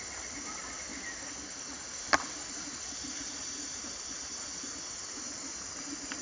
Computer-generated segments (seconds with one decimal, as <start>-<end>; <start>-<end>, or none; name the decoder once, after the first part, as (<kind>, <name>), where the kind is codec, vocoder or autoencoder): none